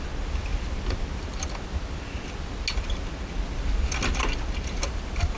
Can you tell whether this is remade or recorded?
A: recorded